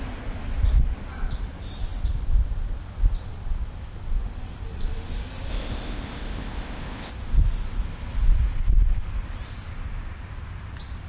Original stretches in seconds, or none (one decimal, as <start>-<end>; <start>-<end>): 0.0-5.5; 7.1-11.1

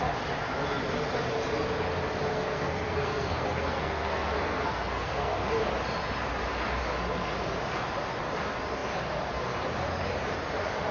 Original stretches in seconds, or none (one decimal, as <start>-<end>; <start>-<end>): 0.0-2.3; 5.4-10.9

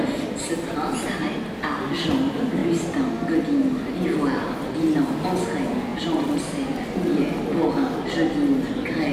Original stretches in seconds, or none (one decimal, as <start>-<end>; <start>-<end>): 0.0-9.1

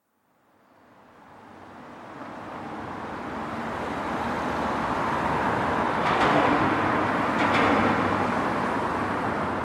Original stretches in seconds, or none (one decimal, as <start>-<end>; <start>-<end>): 0.0-5.9; 6.8-9.6

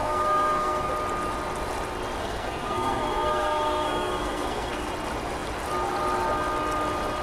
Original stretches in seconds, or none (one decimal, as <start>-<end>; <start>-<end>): 0.9-2.2; 4.9-7.2

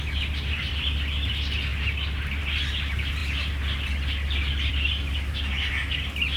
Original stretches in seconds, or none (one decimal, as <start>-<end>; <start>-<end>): 0.0-6.4

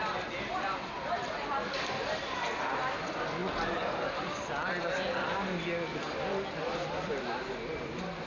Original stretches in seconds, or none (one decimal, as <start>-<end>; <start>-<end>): 0.0-8.3

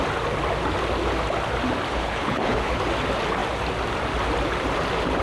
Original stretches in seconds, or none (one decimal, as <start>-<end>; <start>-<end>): 0.0-1.9; 2.8-5.2